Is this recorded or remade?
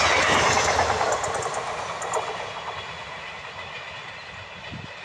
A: recorded